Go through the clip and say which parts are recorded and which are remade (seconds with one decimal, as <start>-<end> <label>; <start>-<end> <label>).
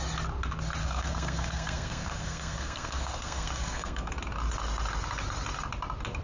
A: 0.0-0.8 recorded; 0.8-4.1 remade; 4.1-6.2 recorded